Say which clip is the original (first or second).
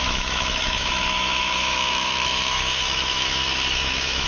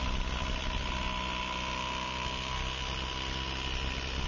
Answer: second